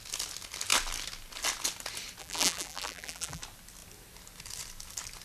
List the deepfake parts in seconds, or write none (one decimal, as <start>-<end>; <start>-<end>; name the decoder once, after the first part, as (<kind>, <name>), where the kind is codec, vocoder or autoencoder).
2.2-3.4 (vocoder, BigVGAN v2)